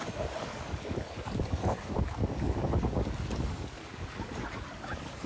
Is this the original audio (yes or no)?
no